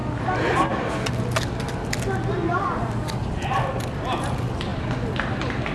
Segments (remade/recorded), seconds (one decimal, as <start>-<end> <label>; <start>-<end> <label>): 0.0-2.6 recorded; 2.6-5.7 remade